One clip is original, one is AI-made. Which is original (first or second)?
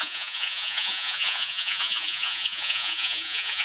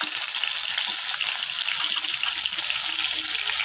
second